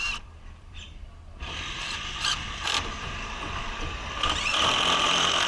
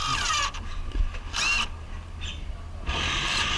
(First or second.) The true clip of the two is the second